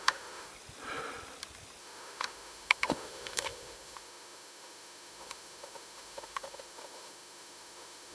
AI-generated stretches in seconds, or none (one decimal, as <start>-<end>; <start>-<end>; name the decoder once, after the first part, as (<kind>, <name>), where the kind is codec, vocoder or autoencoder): 0.0-0.5 (autoencoder, DAC-VAE); 1.8-8.1